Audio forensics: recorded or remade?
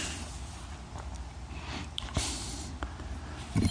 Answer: recorded